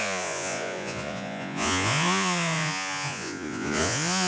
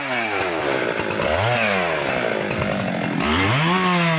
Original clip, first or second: second